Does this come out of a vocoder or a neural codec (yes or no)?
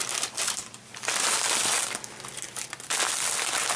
no